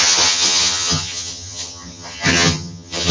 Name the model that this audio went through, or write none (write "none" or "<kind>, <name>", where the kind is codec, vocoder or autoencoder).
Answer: vocoder, HiFi-GAN